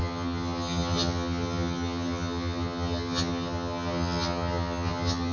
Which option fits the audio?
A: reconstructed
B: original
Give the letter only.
A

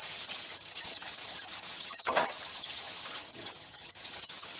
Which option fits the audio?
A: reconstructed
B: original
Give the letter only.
A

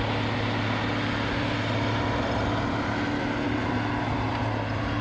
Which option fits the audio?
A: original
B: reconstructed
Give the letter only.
A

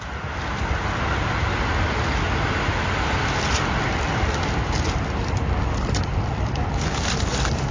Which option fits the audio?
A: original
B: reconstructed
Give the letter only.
A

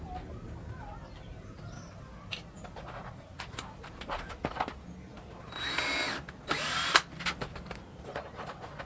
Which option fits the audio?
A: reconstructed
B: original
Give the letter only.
B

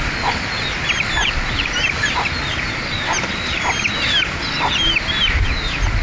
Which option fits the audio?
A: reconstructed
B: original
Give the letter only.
B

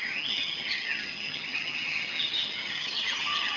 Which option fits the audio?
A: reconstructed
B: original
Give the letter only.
A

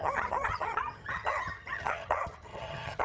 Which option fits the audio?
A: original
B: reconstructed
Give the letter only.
B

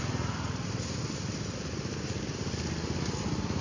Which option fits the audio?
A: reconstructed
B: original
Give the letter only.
B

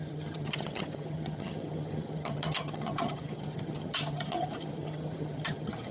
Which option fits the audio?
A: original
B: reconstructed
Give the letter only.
B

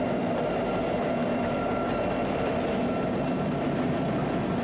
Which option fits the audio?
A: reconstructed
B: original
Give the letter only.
B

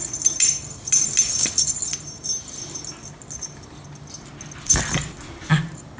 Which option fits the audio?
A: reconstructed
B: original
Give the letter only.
B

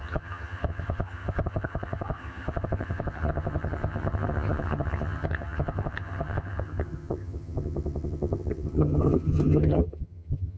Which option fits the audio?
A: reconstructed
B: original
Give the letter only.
A